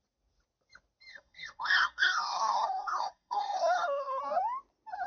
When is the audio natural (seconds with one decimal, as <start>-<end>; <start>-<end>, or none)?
0.0-1.1; 4.2-5.1